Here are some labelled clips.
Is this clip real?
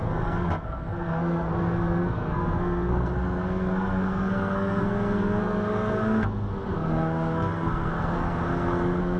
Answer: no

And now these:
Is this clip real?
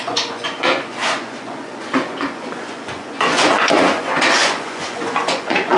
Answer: no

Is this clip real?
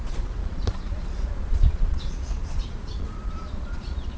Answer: no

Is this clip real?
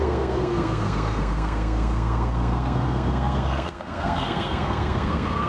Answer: no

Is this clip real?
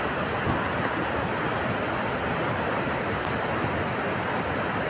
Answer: yes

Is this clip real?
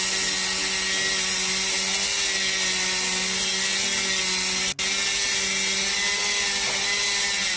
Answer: yes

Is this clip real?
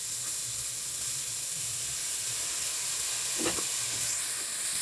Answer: yes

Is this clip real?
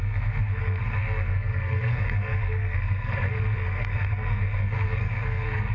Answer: no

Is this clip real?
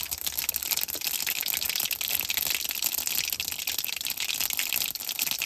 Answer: yes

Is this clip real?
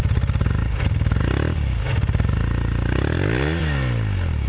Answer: yes